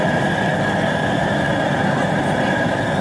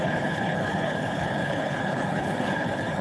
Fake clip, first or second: second